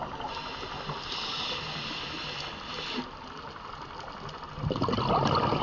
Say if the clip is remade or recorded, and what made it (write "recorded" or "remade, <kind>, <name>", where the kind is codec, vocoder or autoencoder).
recorded